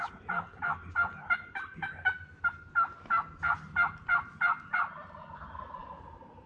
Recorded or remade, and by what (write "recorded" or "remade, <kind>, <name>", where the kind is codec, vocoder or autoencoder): recorded